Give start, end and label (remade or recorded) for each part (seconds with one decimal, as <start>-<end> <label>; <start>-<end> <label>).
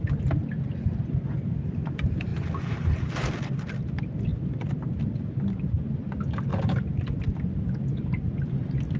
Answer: 0.0-0.4 recorded; 0.4-0.9 remade; 0.9-4.3 recorded; 4.3-5.0 remade; 5.0-6.5 recorded; 6.5-7.7 remade; 7.7-9.0 recorded